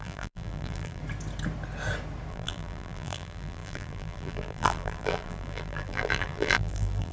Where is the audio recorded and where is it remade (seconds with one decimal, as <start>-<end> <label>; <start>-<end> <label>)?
0.0-1.0 remade; 1.0-2.3 recorded; 2.3-7.1 remade